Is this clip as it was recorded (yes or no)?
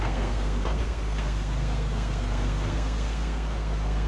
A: no